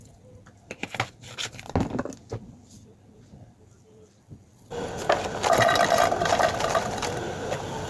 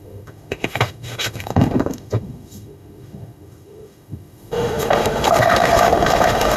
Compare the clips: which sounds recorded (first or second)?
first